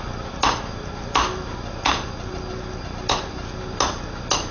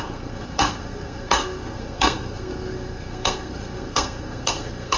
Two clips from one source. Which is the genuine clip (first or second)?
first